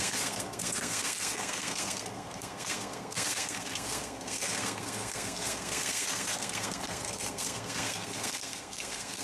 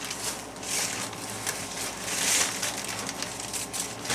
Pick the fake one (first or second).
first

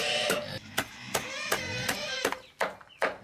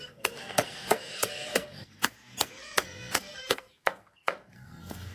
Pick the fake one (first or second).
second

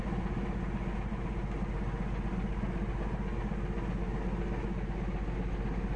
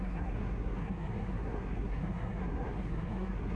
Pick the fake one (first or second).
second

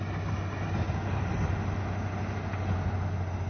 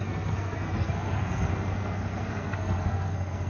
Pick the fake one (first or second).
second